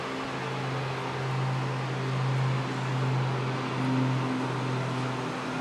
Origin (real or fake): real